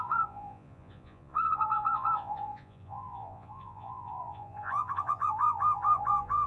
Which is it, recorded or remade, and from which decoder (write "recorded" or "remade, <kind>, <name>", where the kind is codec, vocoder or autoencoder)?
remade, vocoder, Vocos